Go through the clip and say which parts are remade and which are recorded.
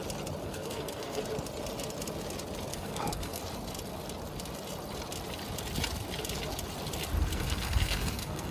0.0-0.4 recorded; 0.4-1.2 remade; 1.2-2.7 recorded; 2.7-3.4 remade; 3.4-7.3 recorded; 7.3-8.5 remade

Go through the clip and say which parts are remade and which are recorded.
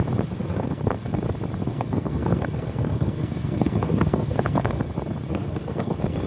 0.0-0.4 recorded; 0.4-1.2 remade; 1.2-1.7 recorded; 1.7-4.8 remade; 4.8-5.3 recorded; 5.3-6.3 remade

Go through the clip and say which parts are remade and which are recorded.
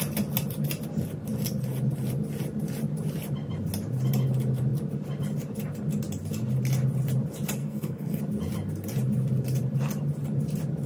0.0-7.6 recorded; 7.6-8.2 remade; 8.2-10.9 recorded